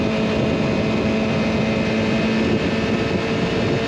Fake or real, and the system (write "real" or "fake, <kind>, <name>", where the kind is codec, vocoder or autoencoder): real